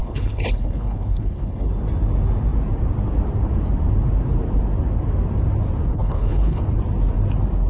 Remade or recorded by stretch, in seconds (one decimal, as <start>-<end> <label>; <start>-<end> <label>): 0.0-1.7 remade; 1.7-5.9 recorded; 5.9-6.6 remade; 6.6-7.7 recorded

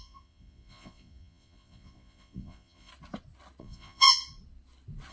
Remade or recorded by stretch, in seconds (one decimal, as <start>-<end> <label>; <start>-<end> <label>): 0.0-2.9 remade; 2.9-3.6 recorded; 3.6-4.2 remade; 4.2-5.1 recorded

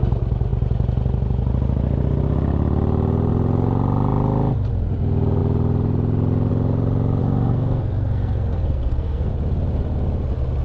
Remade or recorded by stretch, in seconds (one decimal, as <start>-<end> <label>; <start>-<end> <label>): 0.0-7.2 recorded; 7.2-9.3 remade; 9.3-10.6 recorded

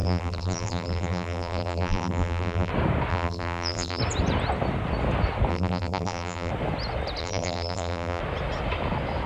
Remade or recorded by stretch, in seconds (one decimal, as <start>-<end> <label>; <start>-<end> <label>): 0.0-2.7 remade; 2.7-3.1 recorded; 3.1-4.0 remade; 4.0-5.5 recorded; 5.5-6.5 remade; 6.5-7.2 recorded; 7.2-8.2 remade; 8.2-9.3 recorded

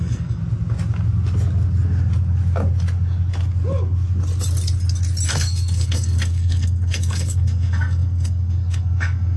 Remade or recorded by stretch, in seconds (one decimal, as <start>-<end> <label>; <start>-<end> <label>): 0.0-0.4 remade; 0.4-5.3 recorded; 5.3-9.4 remade